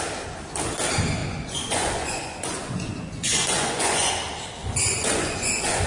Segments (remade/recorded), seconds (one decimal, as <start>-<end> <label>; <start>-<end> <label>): 0.0-1.2 recorded; 1.2-4.1 remade; 4.1-4.6 recorded; 4.6-5.9 remade